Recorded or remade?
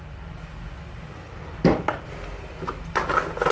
recorded